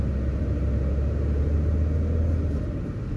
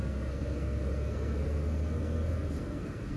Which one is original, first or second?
first